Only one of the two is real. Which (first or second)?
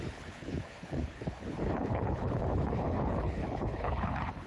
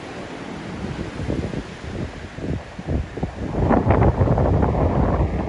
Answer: second